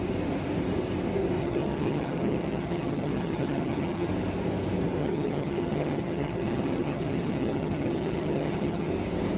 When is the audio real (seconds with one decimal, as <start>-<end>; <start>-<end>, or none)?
0.0-1.4; 4.1-5.0; 8.9-9.4